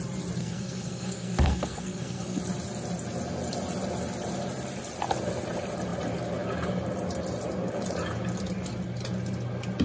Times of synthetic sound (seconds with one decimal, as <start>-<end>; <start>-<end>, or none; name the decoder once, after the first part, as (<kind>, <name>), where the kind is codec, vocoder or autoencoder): 0.4-2.4 (codec, SNAC)